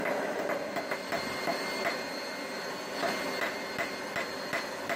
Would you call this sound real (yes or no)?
yes